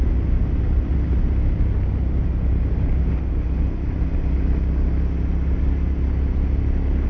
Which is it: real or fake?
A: real